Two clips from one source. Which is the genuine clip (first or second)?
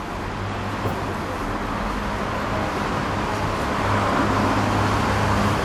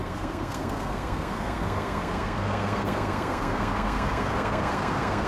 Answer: first